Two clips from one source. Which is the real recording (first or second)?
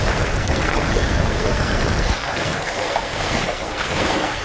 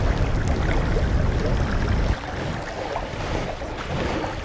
second